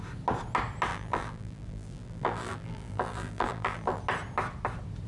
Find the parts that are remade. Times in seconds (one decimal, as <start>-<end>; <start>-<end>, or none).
0.9-4.0